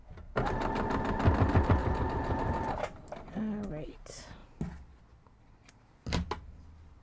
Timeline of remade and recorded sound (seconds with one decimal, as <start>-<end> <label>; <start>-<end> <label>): 0.0-7.0 recorded